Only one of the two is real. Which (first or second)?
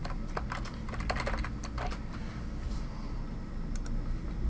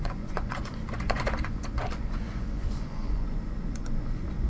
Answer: first